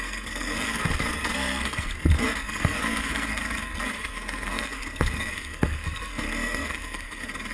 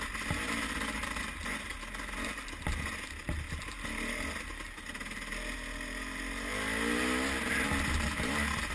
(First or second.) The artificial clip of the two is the first